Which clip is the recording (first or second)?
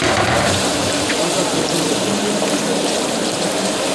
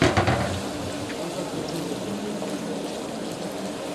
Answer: second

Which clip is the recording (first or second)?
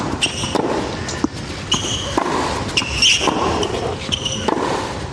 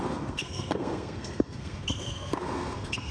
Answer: first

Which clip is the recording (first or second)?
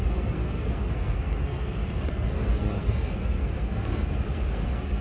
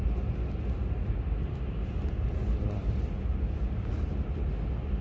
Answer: second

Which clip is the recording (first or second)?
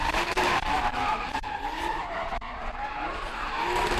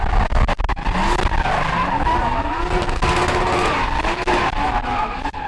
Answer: second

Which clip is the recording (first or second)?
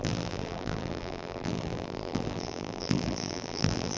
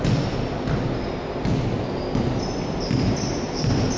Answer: second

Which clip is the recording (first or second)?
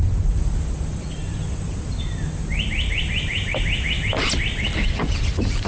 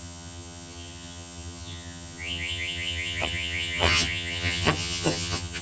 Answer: first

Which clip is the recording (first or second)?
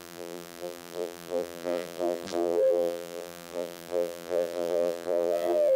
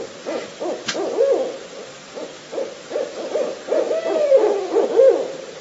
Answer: second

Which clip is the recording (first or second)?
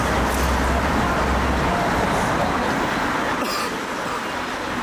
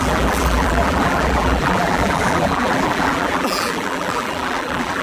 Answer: first